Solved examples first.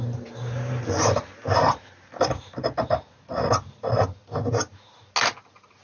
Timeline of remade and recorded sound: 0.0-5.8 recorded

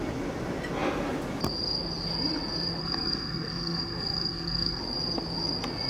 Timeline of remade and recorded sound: 0.0-2.8 recorded; 2.8-4.8 remade; 4.8-5.9 recorded

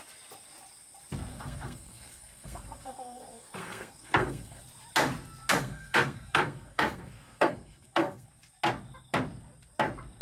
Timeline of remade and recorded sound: 0.0-1.3 recorded; 1.3-4.6 remade; 4.6-5.5 recorded; 5.5-8.3 remade; 8.3-10.2 recorded

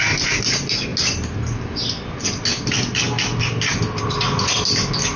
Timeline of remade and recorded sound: 0.0-5.2 recorded